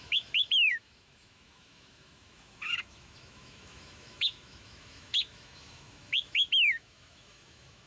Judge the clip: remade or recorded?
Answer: remade